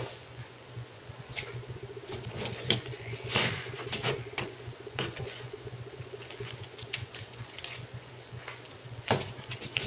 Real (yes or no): no